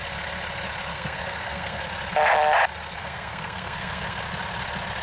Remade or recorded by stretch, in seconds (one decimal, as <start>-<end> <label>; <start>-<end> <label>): 0.0-0.9 recorded; 0.9-1.8 remade; 1.8-3.0 recorded; 3.0-4.2 remade; 4.2-5.0 recorded